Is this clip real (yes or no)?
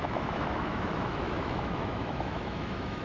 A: no